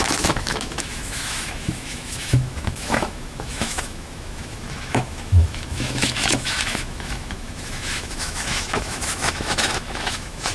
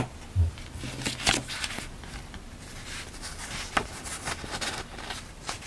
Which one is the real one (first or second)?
second